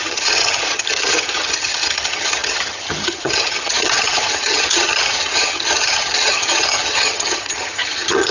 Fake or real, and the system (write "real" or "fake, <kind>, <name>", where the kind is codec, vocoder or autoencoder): fake, vocoder, HiFi-GAN